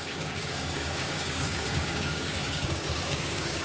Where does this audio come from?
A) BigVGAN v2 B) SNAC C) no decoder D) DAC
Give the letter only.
D